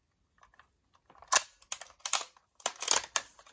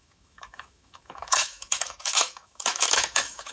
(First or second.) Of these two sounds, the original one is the first